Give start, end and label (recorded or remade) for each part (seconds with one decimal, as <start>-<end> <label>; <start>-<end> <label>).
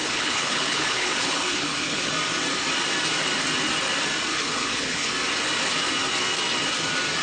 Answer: 0.0-2.1 remade; 2.1-4.3 recorded; 4.3-5.1 remade; 5.1-7.2 recorded